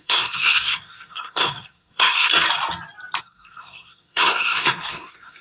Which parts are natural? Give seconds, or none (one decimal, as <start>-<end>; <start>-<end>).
2.3-3.2